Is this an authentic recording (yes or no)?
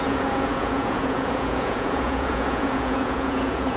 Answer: no